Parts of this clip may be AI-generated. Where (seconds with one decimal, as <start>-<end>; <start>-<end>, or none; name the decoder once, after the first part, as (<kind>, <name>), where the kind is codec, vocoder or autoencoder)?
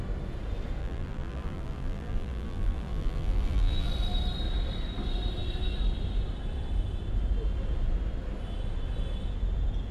0.8-3.9 (vocoder, BigVGAN v2)